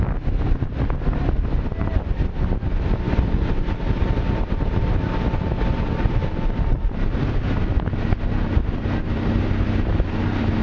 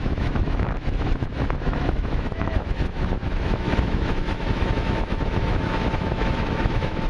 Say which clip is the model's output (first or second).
second